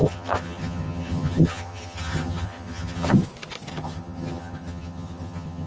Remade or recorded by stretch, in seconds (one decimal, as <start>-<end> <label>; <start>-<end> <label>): 0.0-3.1 remade; 3.1-3.7 recorded; 3.7-5.7 remade